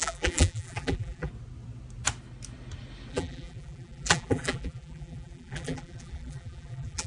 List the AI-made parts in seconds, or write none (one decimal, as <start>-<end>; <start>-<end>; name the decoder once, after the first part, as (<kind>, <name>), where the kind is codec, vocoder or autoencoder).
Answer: 0.0-1.3 (vocoder, BigVGAN v2); 3.1-7.1